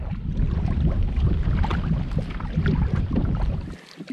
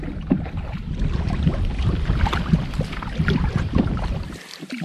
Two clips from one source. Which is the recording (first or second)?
first